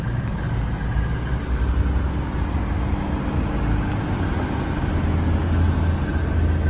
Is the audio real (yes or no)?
yes